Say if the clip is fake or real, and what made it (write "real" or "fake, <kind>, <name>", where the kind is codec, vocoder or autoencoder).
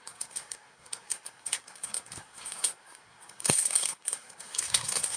fake, codec, SNAC